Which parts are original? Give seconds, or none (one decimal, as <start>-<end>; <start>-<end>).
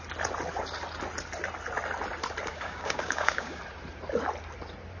0.0-2.5; 3.6-5.0